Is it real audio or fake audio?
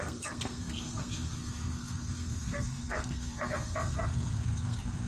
fake